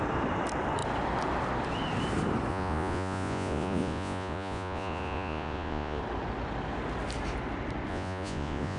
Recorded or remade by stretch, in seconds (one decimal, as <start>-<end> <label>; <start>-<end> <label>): 0.0-2.5 recorded; 2.5-6.0 remade; 6.0-7.9 recorded; 7.9-8.8 remade